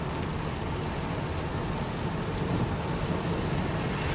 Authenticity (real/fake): real